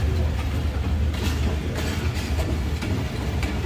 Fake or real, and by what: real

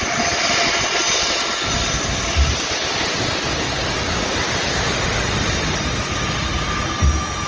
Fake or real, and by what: real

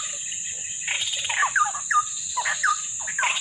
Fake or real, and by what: real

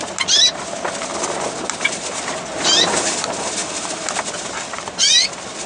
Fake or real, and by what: real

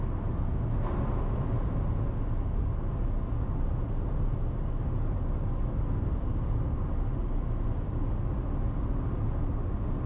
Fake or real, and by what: real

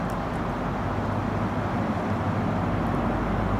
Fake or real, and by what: real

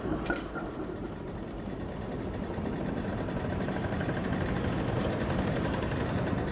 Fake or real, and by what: fake, vocoder, BigVGAN v2